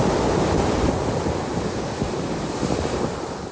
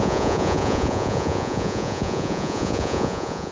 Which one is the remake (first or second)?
second